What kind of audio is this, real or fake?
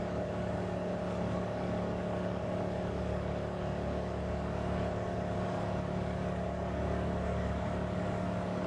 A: fake